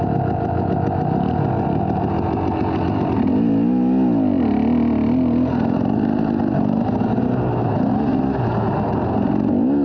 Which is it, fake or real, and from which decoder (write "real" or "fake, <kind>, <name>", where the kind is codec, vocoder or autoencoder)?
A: real